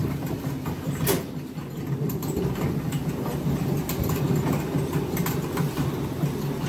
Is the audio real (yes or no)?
yes